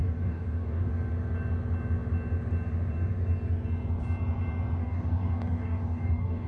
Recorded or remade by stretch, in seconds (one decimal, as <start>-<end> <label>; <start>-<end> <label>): 0.0-0.9 remade; 0.9-4.8 recorded; 4.8-6.5 remade